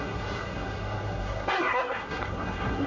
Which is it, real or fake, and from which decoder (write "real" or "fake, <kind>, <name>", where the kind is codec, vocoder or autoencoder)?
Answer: fake, codec, SNAC